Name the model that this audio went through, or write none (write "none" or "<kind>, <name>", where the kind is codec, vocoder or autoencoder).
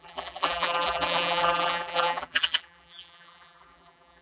vocoder, BigVGAN v2